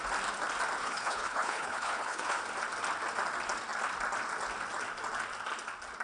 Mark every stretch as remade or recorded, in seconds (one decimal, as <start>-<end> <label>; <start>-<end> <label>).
0.0-0.8 recorded; 0.8-2.4 remade; 2.4-6.0 recorded

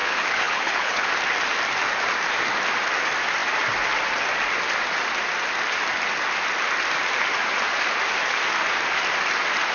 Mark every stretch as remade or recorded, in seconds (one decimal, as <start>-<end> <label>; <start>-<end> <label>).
0.0-1.1 remade; 1.1-9.7 recorded